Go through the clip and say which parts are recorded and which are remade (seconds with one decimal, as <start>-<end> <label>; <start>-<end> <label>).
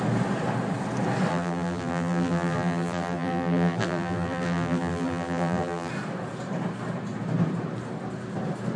0.0-1.3 recorded; 1.3-5.9 remade; 5.9-8.8 recorded